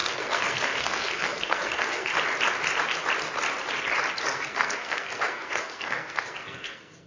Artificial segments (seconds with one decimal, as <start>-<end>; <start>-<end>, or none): 0.0-2.1; 4.1-7.1